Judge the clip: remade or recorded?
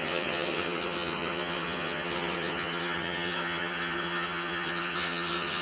remade